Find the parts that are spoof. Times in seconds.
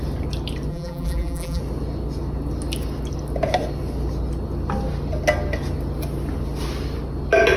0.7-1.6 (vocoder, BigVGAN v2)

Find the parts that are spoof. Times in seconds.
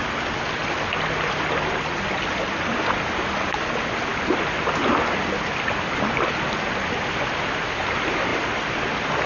none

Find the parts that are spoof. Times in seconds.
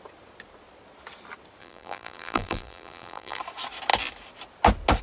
1.6-3.4 (vocoder, BigVGAN v2)